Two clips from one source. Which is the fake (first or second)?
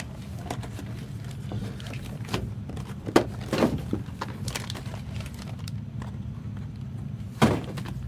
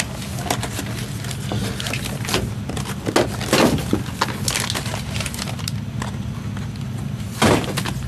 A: first